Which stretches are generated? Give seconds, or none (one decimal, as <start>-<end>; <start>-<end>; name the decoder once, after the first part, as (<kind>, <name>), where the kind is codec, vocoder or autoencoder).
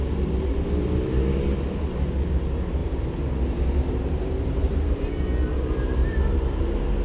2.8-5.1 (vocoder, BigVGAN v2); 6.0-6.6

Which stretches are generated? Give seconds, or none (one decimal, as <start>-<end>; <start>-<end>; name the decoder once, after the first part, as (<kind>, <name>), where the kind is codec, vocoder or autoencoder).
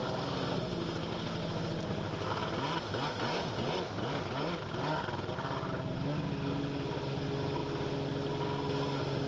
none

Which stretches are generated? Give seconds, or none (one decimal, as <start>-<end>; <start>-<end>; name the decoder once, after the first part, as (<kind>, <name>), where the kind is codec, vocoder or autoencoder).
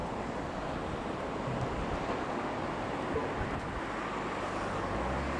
none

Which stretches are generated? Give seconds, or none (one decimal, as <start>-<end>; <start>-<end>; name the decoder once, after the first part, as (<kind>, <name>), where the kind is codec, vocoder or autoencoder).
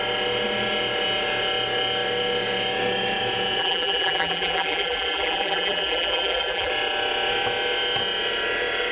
3.6-6.7 (vocoder, BigVGAN v2)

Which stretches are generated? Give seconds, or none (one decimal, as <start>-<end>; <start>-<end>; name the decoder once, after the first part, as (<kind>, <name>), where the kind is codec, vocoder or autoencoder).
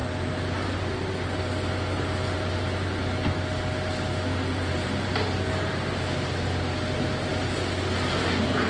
none